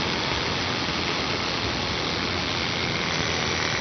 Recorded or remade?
recorded